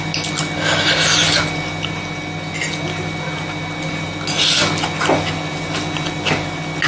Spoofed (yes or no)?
no